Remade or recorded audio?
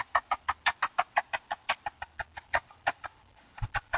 recorded